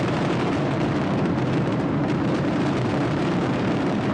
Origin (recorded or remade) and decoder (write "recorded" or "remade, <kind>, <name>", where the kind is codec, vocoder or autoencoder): remade, vocoder, BigVGAN v2